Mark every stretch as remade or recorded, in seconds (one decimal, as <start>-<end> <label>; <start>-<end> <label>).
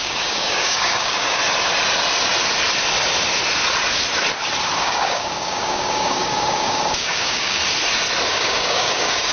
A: 0.0-1.4 remade; 1.4-4.8 recorded; 4.8-7.6 remade; 7.6-8.3 recorded; 8.3-9.3 remade